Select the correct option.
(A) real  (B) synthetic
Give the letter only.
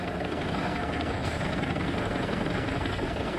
B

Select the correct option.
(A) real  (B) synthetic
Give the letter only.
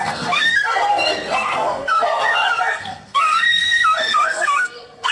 B